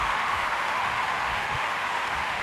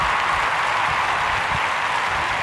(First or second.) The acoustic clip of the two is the second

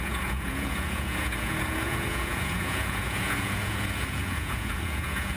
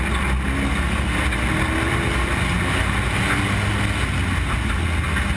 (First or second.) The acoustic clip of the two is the second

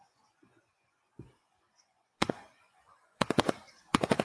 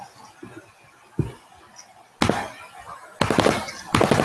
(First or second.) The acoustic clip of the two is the second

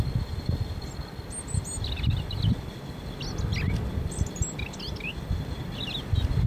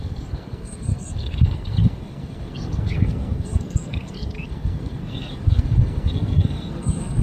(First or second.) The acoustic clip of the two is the first